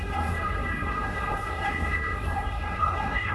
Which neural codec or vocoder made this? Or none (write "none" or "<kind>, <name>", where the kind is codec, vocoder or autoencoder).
codec, SNAC